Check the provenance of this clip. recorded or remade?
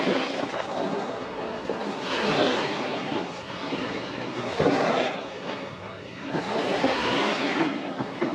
remade